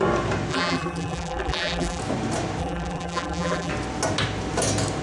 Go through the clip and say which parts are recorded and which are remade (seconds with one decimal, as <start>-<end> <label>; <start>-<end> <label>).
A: 0.0-0.5 recorded; 0.5-2.0 remade; 2.0-2.6 recorded; 2.6-3.7 remade; 3.7-5.0 recorded

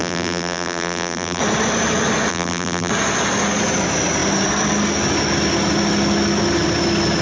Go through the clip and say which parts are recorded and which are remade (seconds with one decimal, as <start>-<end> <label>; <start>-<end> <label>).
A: 0.0-1.4 remade; 1.4-2.3 recorded; 2.3-2.9 remade; 2.9-7.2 recorded

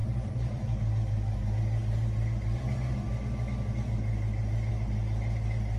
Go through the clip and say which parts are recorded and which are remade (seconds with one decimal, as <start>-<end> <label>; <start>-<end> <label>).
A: 0.0-0.8 remade; 0.8-5.8 recorded

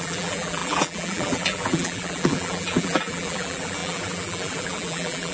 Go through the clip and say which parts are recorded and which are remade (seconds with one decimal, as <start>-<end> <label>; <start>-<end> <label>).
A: 0.0-5.3 remade

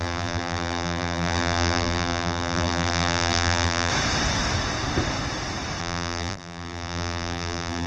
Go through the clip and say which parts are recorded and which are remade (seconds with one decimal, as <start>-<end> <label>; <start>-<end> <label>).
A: 0.0-3.9 remade; 3.9-5.8 recorded; 5.8-7.9 remade

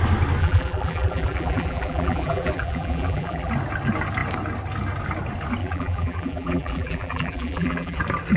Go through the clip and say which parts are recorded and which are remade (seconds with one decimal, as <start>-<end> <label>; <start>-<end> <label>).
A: 0.0-0.4 recorded; 0.4-3.5 remade; 3.5-5.6 recorded; 5.6-8.0 remade; 8.0-8.4 recorded

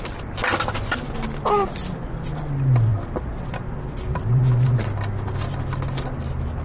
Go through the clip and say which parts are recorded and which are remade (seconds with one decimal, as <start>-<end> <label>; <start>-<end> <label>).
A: 0.0-6.6 recorded